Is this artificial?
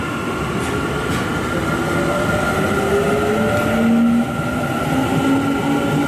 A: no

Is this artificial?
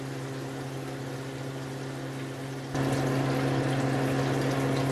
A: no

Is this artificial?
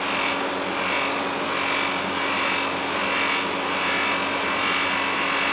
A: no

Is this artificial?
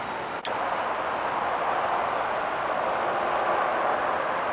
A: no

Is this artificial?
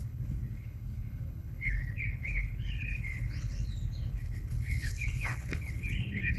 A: yes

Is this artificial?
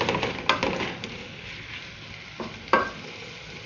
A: no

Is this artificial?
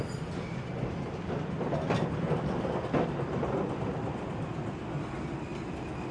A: no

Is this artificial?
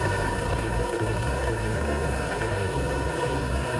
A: yes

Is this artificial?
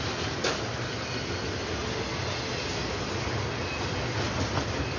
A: no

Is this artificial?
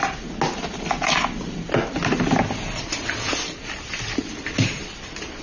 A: no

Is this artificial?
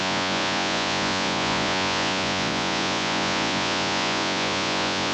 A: yes